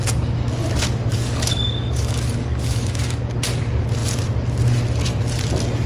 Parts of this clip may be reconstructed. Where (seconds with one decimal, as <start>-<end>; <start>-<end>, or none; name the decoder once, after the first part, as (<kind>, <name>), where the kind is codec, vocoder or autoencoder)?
1.1-3.2 (codec, DAC)

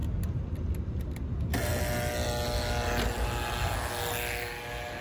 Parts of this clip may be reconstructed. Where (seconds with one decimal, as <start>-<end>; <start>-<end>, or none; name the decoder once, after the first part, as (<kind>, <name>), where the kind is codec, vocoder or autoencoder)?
0.9-1.7 (vocoder, BigVGAN v2)